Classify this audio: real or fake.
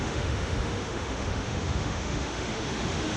fake